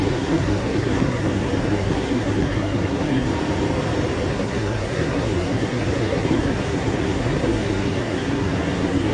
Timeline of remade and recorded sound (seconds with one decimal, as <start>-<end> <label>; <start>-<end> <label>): 0.0-3.3 remade; 3.3-4.3 recorded; 4.3-9.1 remade